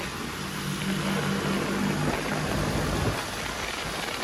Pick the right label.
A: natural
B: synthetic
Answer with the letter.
A